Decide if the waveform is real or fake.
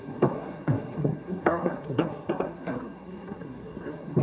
fake